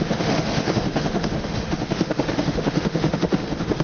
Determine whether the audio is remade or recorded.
remade